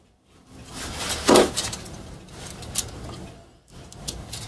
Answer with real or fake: real